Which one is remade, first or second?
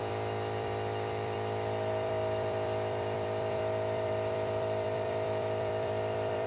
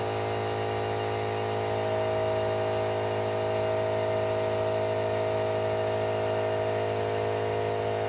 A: first